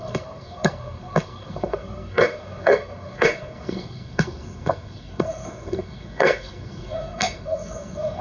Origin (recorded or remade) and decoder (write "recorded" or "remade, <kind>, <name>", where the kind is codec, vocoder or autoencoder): remade, codec, SNAC